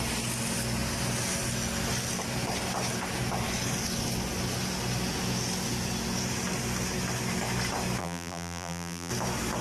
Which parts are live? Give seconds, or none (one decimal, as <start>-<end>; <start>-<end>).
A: 0.0-8.0; 9.1-9.6